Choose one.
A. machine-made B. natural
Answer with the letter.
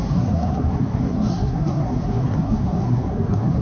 A